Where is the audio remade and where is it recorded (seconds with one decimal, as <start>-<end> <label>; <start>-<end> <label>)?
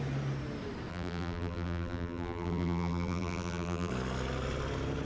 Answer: 0.0-0.9 recorded; 0.9-3.9 remade; 3.9-5.0 recorded